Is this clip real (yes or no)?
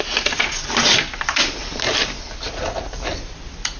yes